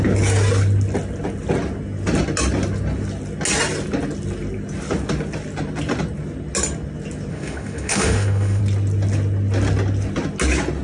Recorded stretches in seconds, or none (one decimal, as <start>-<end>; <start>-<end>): 0.0-7.3; 8.6-10.8